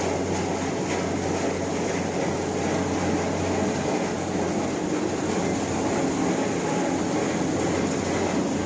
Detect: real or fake real